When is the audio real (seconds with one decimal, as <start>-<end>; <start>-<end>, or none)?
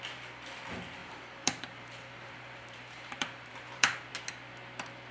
0.0-1.0; 4.1-5.1